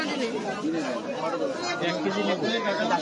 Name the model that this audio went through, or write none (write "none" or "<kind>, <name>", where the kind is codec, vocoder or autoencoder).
none